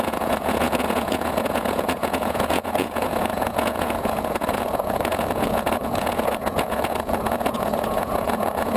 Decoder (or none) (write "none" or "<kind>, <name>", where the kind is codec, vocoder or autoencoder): vocoder, Vocos